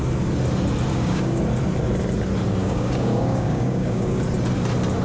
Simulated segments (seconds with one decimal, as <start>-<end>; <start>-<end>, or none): 0.9-1.4; 2.6-4.2